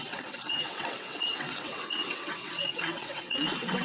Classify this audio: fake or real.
fake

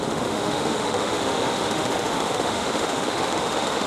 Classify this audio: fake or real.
fake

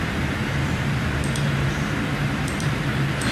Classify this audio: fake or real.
fake